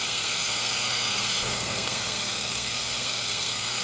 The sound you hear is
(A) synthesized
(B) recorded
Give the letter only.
A